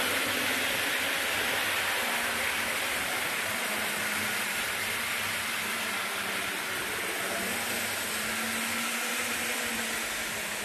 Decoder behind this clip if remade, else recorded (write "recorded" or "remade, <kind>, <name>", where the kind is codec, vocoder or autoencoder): recorded